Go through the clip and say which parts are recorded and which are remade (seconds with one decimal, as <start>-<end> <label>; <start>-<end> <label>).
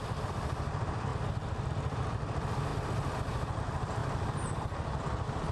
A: 0.0-1.1 remade; 1.1-1.7 recorded; 1.7-2.7 remade; 2.7-3.6 recorded; 3.6-4.0 remade; 4.0-5.0 recorded; 5.0-5.5 remade